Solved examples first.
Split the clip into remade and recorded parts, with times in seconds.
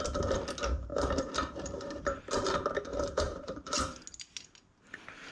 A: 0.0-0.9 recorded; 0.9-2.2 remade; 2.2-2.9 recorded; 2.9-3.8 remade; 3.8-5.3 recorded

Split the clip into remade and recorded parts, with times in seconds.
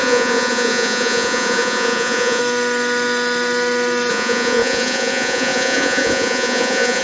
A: 0.0-2.4 remade; 2.4-4.1 recorded; 4.1-7.0 remade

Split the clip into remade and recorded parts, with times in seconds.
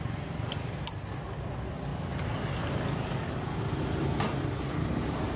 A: 0.0-5.4 recorded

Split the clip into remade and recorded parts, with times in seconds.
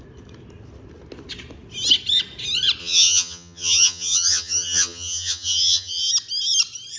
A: 0.0-2.8 recorded; 2.8-6.0 remade; 6.0-7.0 recorded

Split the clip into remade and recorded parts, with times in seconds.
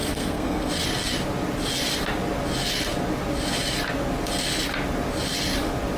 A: 0.0-0.7 remade; 0.7-6.0 recorded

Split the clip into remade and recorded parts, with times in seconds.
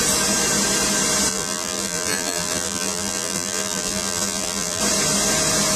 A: 0.0-1.3 recorded; 1.3-4.8 remade; 4.8-5.8 recorded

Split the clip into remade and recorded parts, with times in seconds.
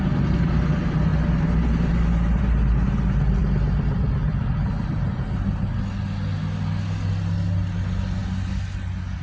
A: 0.0-9.2 recorded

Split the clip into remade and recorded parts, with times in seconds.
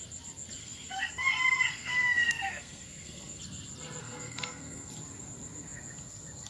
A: 0.0-0.6 recorded; 0.6-3.4 remade; 3.4-4.0 recorded; 4.0-4.9 remade; 4.9-6.5 recorded